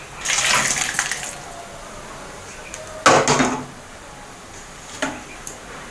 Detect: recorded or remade recorded